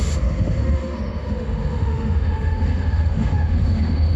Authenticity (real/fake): fake